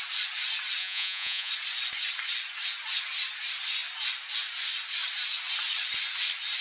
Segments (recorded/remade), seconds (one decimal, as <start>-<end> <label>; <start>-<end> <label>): 0.0-0.8 recorded; 0.8-1.5 remade; 1.5-6.6 recorded